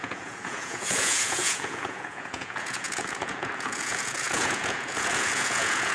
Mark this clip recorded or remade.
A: remade